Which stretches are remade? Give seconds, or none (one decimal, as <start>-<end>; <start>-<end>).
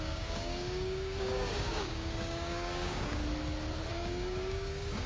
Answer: 0.0-3.2; 3.9-5.1